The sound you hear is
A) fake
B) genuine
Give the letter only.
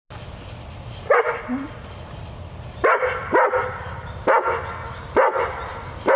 B